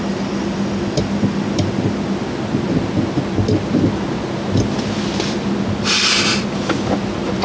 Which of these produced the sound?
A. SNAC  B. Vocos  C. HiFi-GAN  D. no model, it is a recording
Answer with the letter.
D